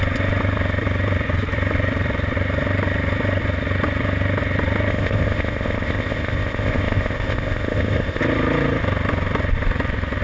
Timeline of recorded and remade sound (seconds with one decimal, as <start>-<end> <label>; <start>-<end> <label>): 0.0-4.9 recorded; 4.9-8.2 remade; 8.2-10.2 recorded